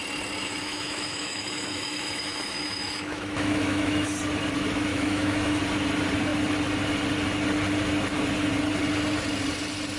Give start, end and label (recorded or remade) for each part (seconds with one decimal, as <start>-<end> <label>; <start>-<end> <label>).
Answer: 0.0-0.4 recorded; 0.4-4.1 remade; 4.1-4.9 recorded; 4.9-5.6 remade; 5.6-10.0 recorded